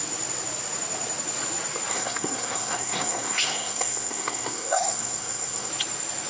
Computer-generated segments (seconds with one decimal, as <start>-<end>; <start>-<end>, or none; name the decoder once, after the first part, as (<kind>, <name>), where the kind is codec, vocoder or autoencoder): 1.9-5.7 (codec, SNAC)